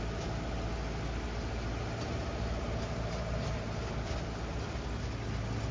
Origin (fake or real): real